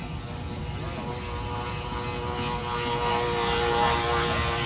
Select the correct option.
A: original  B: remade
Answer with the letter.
A